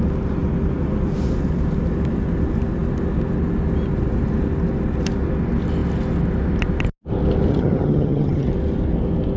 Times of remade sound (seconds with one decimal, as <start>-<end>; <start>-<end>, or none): 7.5-8.5